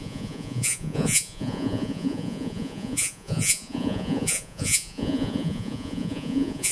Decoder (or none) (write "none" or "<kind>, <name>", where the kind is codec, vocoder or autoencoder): vocoder, Vocos